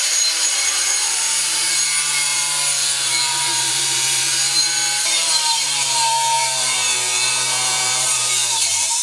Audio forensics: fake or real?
fake